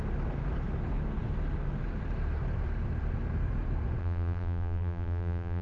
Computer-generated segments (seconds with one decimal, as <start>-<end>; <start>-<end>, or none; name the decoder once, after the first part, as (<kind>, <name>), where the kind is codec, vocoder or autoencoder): 4.0-5.6 (vocoder, BigVGAN v2)